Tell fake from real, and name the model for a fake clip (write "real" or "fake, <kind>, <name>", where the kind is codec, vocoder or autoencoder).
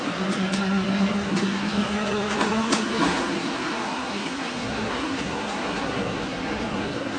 fake, codec, SNAC